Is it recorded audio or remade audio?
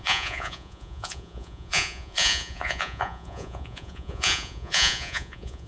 remade